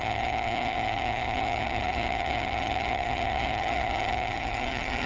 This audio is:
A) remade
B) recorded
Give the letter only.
A